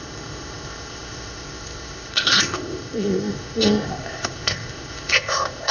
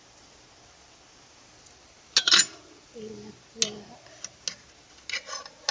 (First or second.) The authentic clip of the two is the second